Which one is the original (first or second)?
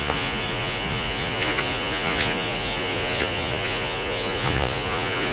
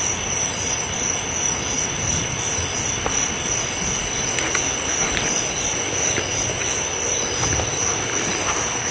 second